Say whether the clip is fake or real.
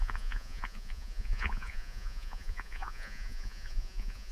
fake